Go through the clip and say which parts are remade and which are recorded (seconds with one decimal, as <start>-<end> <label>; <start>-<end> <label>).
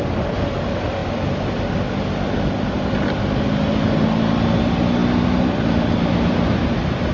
0.0-7.1 recorded